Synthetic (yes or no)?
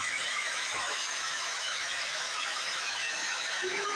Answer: yes